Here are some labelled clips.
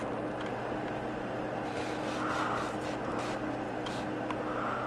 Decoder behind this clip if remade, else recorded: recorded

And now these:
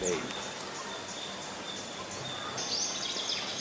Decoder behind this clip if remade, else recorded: recorded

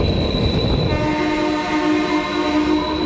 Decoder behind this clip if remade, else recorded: recorded